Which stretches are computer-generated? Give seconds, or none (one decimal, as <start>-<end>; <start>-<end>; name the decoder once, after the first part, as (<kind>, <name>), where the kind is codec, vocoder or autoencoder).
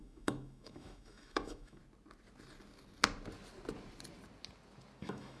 0.0-1.8 (autoencoder, DAC-VAE); 5.0-5.4